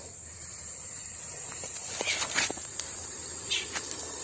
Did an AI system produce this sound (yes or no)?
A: yes